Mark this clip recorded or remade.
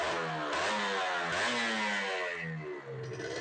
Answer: recorded